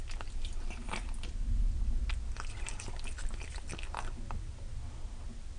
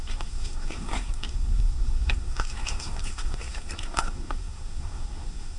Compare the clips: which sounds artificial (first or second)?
second